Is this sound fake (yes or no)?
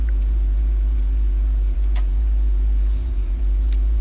yes